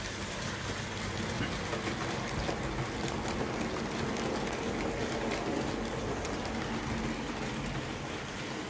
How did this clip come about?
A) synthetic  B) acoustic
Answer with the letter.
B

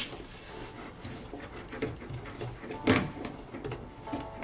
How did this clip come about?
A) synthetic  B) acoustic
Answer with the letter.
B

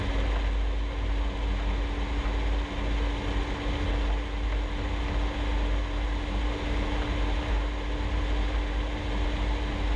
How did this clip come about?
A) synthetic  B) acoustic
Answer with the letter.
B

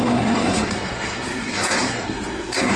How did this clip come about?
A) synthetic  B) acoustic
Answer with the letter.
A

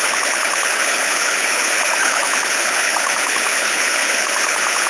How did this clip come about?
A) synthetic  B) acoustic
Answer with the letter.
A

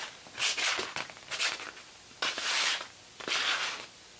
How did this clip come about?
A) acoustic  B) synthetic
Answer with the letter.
A